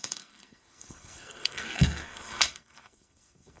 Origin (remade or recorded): remade